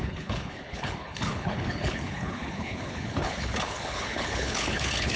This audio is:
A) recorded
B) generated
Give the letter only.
B